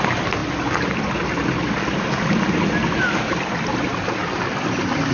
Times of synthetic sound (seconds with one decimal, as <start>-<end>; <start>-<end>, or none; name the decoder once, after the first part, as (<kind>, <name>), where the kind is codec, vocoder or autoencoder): none